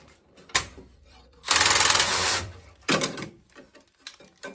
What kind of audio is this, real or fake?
fake